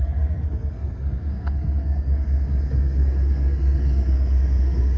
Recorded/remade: remade